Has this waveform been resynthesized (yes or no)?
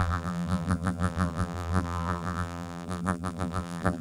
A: yes